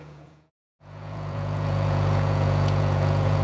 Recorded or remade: remade